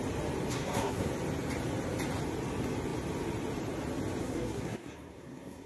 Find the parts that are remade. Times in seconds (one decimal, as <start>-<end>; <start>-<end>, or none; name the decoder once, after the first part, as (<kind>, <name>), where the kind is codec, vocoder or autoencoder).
0.5-1.1 (codec, SNAC); 4.2-5.7